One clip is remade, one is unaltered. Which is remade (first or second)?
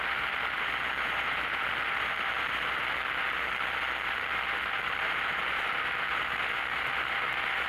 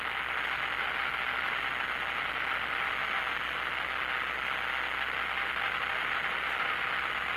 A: first